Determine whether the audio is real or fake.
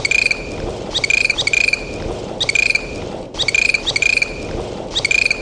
real